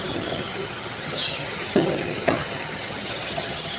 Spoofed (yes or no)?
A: yes